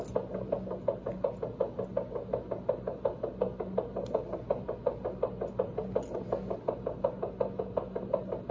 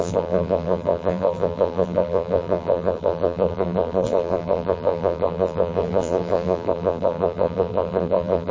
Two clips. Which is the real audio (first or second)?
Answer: first